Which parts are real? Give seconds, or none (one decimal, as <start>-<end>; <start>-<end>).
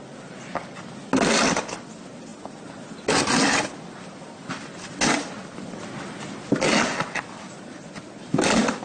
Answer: 0.0-8.8